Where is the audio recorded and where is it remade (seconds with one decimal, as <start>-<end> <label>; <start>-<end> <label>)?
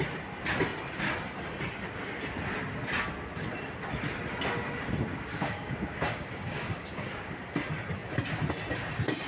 0.0-5.1 recorded; 5.1-7.3 remade; 7.3-9.3 recorded